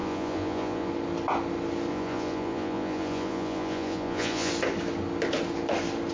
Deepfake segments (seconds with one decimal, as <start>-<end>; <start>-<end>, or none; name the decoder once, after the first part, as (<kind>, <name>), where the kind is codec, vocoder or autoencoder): 0.0-0.9 (vocoder, Vocos); 1.9-4.5